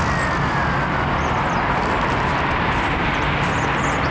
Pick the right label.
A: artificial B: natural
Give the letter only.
B